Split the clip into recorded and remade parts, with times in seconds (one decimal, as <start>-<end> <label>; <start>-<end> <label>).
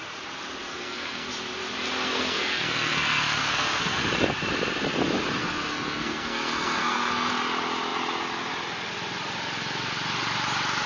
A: 0.0-0.6 recorded; 0.6-1.3 remade; 1.3-2.0 recorded; 2.0-4.0 remade; 4.0-5.4 recorded; 5.4-7.3 remade; 7.3-10.9 recorded